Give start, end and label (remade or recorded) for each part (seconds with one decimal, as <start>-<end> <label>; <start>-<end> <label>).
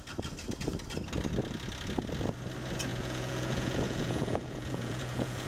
0.0-2.9 recorded; 2.9-5.5 remade